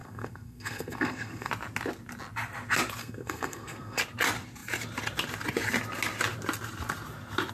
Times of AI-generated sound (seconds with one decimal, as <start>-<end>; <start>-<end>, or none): 0.0-1.5; 3.0-4.0